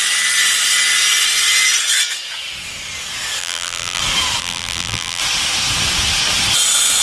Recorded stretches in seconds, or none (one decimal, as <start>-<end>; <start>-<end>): 0.0-3.4; 4.0-4.4; 5.2-7.0